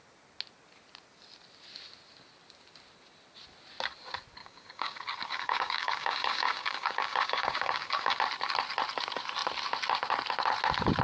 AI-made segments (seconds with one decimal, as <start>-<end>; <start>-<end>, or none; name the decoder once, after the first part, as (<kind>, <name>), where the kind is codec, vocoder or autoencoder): 4.4-8.2 (codec, DAC)